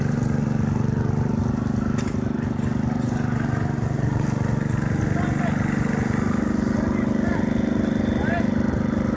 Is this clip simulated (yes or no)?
no